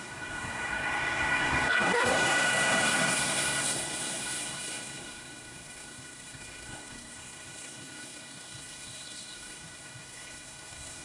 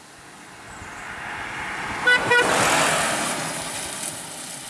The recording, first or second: second